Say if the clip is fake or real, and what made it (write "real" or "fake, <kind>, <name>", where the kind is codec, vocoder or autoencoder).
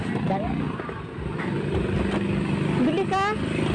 real